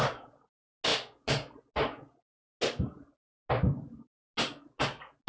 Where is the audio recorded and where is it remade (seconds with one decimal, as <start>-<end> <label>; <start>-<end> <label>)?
0.0-5.3 recorded